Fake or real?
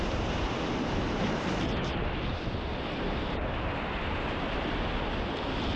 real